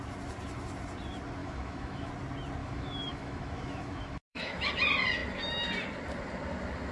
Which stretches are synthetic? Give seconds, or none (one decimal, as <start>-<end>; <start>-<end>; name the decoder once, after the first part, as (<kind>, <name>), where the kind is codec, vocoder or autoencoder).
1.4-2.1 (autoencoder, DAC-VAE); 2.6-4.7